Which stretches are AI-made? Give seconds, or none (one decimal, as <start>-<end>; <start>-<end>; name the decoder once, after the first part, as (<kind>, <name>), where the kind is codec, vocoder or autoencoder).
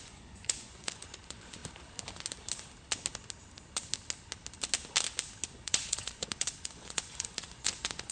0.0-1.6 (vocoder, Vocos); 5.5-8.1